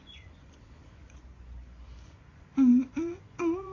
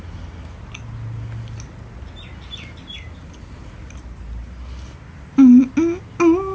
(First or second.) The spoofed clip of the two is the first